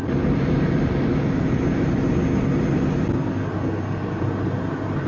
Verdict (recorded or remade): recorded